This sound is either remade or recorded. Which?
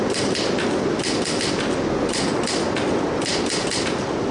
recorded